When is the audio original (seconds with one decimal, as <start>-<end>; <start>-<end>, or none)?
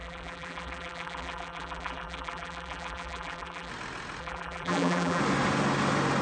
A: 3.7-4.2; 5.2-6.2